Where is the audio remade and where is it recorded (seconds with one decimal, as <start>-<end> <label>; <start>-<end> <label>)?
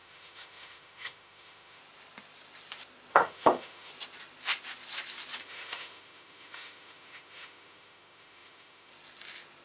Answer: 0.0-1.8 remade; 1.8-3.1 recorded; 3.1-3.9 remade; 3.9-5.4 recorded; 5.4-8.9 remade; 8.9-9.6 recorded